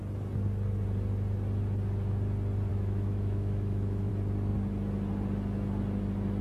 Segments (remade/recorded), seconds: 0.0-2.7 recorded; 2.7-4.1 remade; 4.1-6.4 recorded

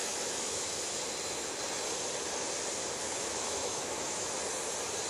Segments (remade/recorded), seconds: 0.0-0.8 remade; 0.8-3.0 recorded; 3.0-4.3 remade; 4.3-5.1 recorded

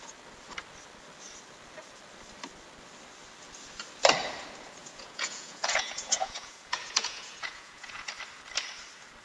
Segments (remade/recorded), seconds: 0.0-4.8 recorded; 4.8-8.1 remade; 8.1-9.2 recorded

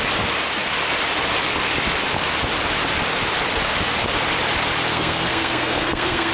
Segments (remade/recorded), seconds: 0.0-4.9 recorded; 4.9-6.3 remade